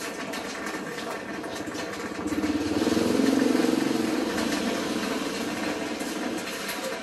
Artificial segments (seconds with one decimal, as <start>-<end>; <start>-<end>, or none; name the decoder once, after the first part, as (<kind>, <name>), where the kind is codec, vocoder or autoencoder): none